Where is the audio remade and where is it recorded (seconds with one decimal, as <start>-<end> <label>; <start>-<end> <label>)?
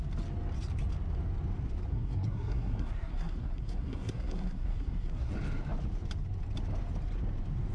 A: 0.0-1.9 recorded; 1.9-5.3 remade; 5.3-7.7 recorded